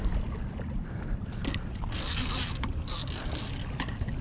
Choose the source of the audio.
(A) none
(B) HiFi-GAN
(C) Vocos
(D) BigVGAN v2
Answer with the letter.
A